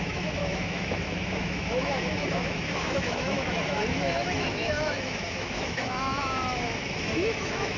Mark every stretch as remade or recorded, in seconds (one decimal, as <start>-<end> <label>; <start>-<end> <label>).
0.0-7.8 remade